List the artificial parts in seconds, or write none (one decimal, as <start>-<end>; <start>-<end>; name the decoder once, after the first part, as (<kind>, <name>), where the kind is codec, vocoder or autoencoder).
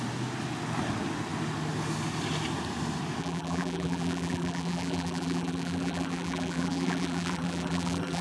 3.2-8.2 (vocoder, BigVGAN v2)